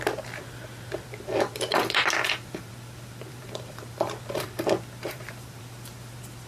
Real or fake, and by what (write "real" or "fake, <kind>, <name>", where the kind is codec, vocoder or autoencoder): fake, vocoder, BigVGAN v2